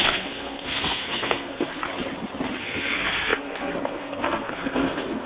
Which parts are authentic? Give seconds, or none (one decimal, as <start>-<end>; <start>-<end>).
1.8-2.6